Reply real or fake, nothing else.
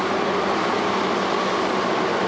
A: real